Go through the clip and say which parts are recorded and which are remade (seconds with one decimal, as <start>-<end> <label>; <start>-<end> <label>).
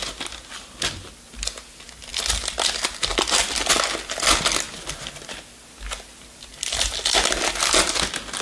0.0-2.1 recorded; 2.1-2.7 remade; 2.7-3.1 recorded; 3.1-3.7 remade; 3.7-8.4 recorded